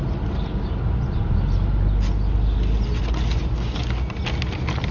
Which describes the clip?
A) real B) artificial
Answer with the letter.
A